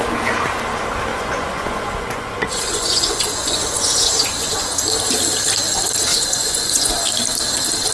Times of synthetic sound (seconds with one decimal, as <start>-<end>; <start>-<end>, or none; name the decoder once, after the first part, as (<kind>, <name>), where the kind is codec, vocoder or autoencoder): 1.1-4.8 (vocoder, Vocos); 6.1-6.9